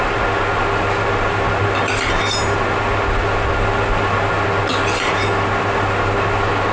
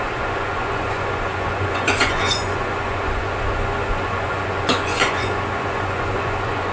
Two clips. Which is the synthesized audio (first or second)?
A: second